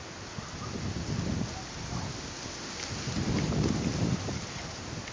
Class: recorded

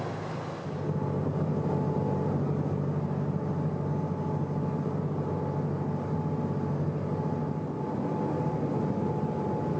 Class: recorded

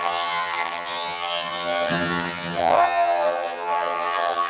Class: remade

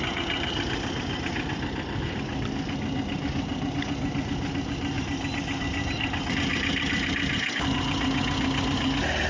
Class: recorded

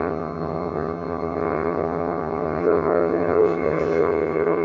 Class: remade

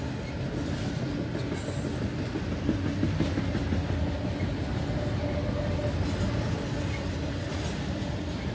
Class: recorded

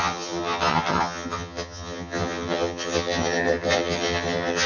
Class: remade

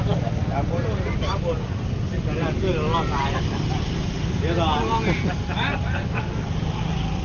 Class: recorded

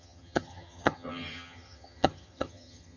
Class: remade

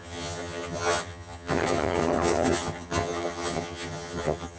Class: remade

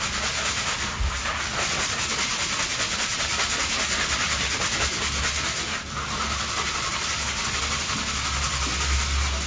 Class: recorded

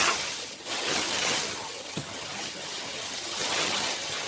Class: remade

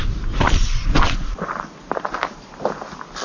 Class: recorded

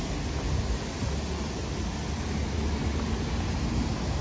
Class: recorded